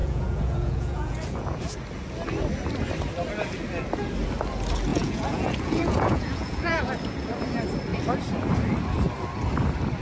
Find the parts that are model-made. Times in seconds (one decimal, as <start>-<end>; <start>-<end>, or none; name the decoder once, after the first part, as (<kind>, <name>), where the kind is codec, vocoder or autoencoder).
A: 0.0-1.6 (vocoder, Vocos); 4.9-6.9